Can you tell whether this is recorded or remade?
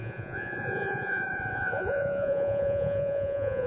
remade